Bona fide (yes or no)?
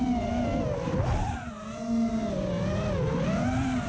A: yes